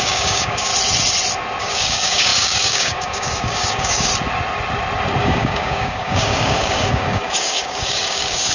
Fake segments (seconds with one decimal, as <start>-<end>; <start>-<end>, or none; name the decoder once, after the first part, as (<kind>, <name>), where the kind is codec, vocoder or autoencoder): 0.0-0.7 (codec, DAC); 1.6-4.1; 5.2-8.5